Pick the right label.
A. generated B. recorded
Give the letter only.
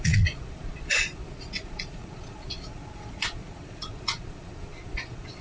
A